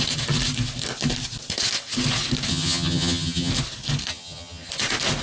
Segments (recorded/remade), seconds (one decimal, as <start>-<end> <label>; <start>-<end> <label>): 0.0-2.5 recorded; 2.5-3.5 remade; 3.5-4.1 recorded; 4.1-4.7 remade; 4.7-5.2 recorded